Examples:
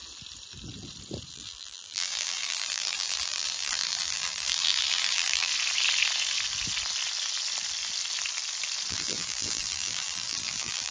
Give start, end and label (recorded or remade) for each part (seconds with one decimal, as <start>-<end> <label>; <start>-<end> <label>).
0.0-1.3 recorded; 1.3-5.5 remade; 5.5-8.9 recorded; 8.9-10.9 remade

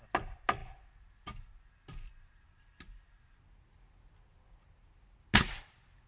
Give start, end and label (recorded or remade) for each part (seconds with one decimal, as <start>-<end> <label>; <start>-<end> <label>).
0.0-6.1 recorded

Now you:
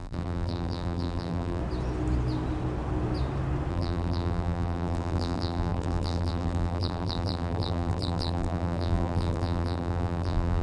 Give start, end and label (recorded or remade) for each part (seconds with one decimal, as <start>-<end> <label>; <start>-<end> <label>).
0.0-1.6 remade; 1.6-3.7 recorded; 3.7-10.6 remade